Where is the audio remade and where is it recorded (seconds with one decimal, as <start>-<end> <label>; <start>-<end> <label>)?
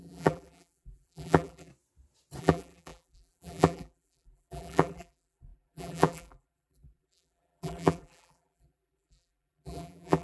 0.0-1.7 remade; 1.7-2.4 recorded; 2.4-10.2 remade